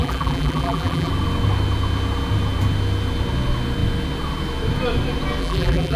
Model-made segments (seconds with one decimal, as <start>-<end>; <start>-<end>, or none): 0.0-1.1; 5.4-6.0